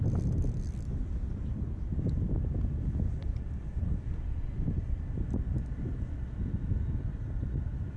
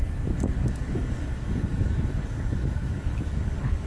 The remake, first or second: second